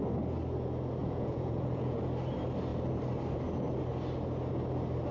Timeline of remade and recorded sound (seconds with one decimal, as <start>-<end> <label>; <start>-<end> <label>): 0.0-1.0 recorded; 1.0-2.0 remade; 2.0-5.1 recorded